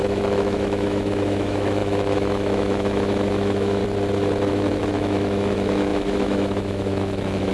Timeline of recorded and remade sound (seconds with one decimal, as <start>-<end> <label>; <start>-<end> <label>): 0.0-3.8 remade; 3.8-4.5 recorded; 4.5-7.5 remade